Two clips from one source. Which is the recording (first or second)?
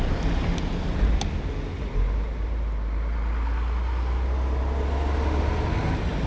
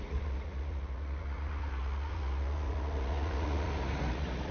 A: first